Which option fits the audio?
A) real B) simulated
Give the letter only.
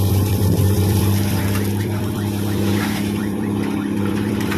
B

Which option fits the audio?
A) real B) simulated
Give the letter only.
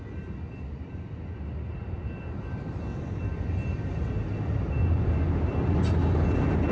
A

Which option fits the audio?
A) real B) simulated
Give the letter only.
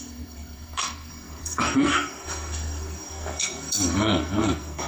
B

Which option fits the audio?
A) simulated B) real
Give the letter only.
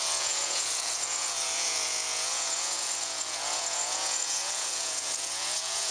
A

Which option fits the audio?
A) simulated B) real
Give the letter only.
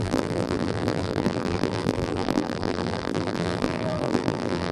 A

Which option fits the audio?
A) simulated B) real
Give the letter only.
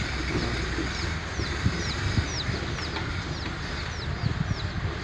B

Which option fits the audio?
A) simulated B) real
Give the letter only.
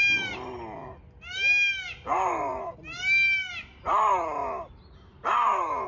B